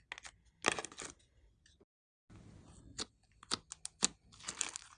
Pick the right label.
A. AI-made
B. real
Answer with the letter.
B